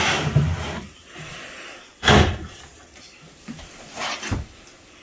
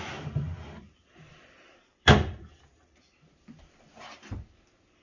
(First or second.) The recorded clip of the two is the second